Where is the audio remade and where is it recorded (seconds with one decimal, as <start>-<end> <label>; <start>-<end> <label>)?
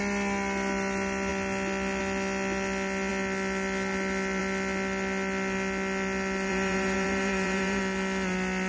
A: 0.0-6.5 recorded; 6.5-7.8 remade; 7.8-8.7 recorded